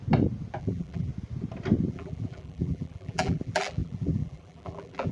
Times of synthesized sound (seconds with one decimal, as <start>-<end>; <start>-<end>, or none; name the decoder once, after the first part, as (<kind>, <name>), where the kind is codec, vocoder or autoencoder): 0.6-1.1 (vocoder, BigVGAN v2); 1.9-5.1